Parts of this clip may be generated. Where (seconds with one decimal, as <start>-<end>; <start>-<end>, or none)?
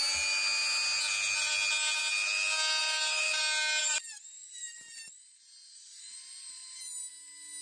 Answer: 2.8-3.4; 3.8-7.1